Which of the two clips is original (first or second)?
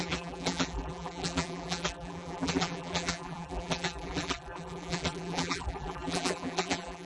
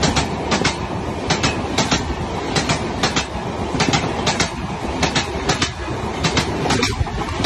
second